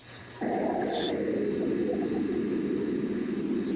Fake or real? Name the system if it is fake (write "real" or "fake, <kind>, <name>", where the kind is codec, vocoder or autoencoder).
fake, vocoder, BigVGAN v2